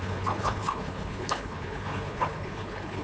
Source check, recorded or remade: remade